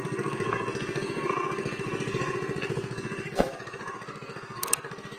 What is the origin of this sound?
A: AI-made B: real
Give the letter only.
A